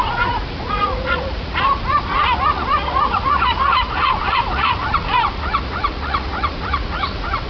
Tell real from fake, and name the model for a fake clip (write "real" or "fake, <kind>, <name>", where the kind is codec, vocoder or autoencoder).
fake, vocoder, Vocos